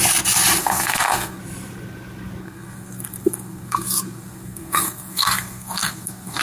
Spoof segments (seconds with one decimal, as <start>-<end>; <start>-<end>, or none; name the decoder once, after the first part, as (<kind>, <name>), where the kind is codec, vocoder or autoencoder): 0.6-1.4 (codec, SNAC); 2.4-6.4